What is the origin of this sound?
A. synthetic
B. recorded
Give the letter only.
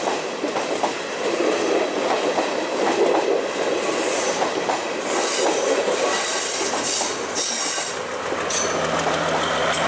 B